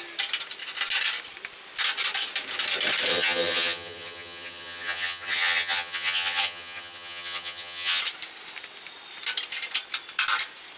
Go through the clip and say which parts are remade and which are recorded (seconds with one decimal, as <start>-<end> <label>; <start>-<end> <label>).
0.0-3.1 recorded; 3.1-8.0 remade; 8.0-10.8 recorded